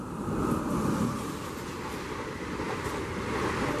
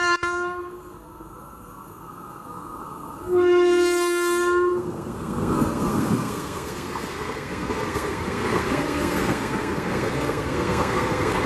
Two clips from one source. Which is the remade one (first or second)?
second